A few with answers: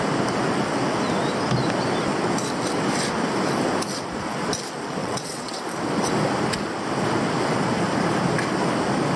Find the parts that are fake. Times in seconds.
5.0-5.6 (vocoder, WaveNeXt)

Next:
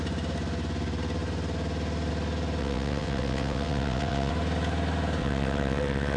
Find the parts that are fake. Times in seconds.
2.6-4.3 (vocoder, WaveNeXt); 5.2-6.2

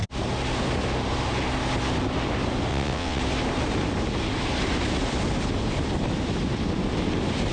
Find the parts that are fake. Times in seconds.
2.7-3.2 (vocoder, WaveNeXt)

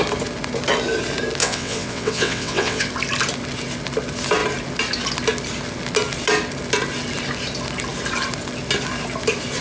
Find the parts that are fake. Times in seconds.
1.4-2.9 (vocoder, WaveNeXt)

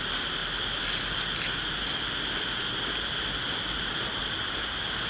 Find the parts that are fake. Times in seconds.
none